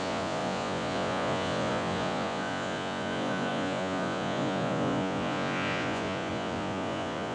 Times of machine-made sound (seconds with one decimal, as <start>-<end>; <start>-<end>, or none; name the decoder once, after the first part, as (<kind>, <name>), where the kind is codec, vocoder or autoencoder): 0.0-7.3 (vocoder, Vocos)